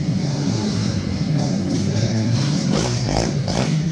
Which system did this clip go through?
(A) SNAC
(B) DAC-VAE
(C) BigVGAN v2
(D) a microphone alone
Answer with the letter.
A